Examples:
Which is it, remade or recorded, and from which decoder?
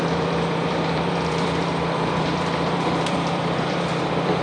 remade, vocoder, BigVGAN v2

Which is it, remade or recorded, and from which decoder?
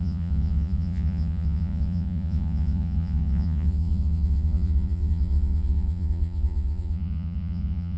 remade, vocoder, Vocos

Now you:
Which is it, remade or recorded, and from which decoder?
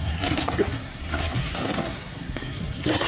remade, codec, SNAC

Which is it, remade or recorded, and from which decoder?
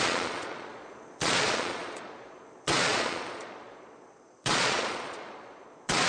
remade, vocoder, Vocos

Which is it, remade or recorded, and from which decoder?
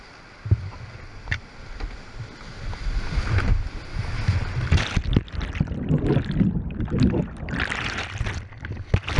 recorded